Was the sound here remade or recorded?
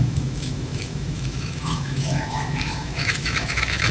remade